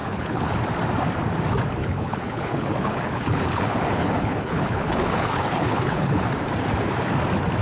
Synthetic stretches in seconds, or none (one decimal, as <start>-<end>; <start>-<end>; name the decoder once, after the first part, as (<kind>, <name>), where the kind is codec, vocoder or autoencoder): 0.0-0.6 (codec, HILCodec); 1.8-6.2